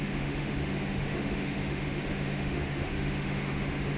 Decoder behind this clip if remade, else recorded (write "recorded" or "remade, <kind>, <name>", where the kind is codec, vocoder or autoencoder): remade, autoencoder, DAC-VAE